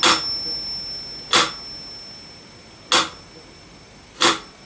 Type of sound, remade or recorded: recorded